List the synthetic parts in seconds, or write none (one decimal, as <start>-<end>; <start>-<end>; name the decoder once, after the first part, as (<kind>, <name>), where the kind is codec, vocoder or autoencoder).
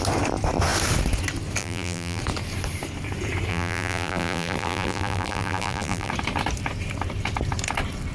1.6-2.2 (vocoder, BigVGAN v2); 3.5-6.1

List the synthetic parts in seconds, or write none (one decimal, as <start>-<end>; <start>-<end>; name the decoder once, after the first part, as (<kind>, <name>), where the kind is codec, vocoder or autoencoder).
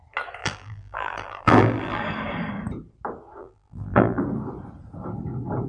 0.4-2.0 (vocoder, BigVGAN v2); 3.4-4.2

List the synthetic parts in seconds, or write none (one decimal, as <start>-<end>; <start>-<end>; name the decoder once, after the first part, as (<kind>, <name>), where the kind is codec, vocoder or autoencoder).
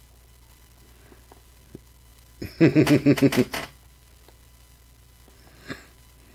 none